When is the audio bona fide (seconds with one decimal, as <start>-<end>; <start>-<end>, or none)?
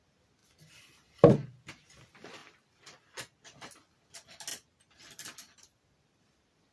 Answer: 0.0-0.4; 1.3-2.4; 4.1-4.5; 6.2-6.7